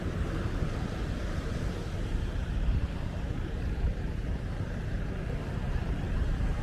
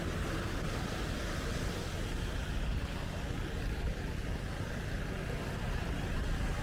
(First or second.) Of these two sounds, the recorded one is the second